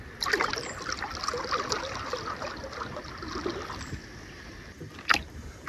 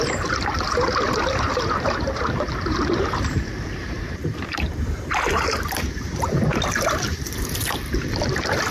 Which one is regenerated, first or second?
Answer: second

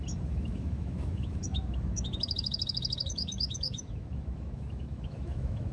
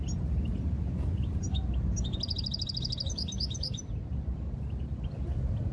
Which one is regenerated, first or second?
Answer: first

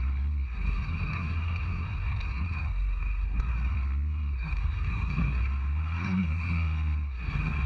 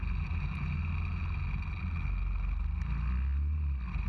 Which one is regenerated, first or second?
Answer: first